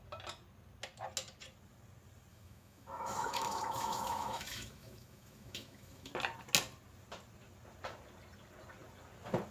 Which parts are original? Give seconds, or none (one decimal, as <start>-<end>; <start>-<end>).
0.0-2.3; 6.1-9.5